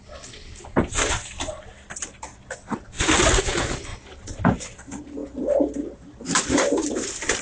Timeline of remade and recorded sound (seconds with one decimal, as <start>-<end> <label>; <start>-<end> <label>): 0.0-7.4 recorded